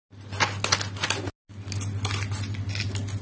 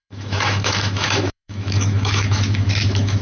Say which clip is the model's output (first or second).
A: second